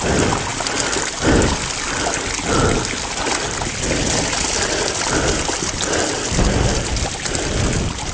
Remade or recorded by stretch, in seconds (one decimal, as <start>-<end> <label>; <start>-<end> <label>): 0.0-8.1 recorded